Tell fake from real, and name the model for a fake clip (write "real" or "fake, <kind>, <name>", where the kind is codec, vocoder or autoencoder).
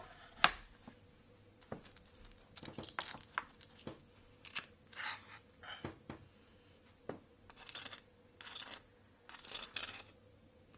real